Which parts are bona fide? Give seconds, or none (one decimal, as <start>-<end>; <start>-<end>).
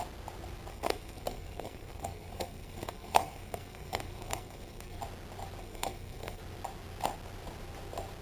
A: 0.0-0.7; 5.0-5.6; 6.4-8.2